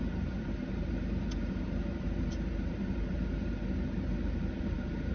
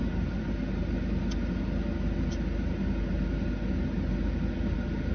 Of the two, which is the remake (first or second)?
first